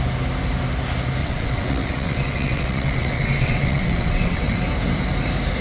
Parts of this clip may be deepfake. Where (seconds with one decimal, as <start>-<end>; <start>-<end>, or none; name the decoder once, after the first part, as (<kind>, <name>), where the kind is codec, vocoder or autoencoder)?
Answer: 1.2-4.6 (vocoder, WaveNeXt)